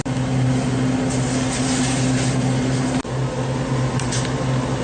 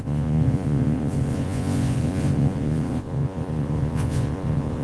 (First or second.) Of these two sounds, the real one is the first